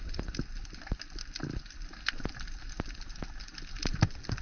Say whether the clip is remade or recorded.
recorded